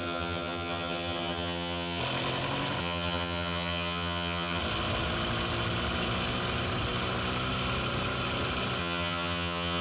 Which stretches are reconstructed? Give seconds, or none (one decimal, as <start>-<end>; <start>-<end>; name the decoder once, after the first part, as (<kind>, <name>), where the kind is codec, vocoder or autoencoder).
0.0-2.0 (vocoder, HiFi-GAN); 2.8-4.6; 8.8-9.8